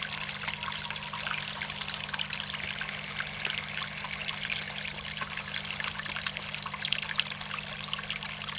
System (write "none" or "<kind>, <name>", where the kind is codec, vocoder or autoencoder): none